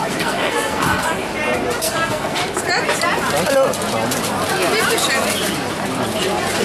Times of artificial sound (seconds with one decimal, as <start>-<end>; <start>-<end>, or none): 0.0-1.2; 1.8-2.4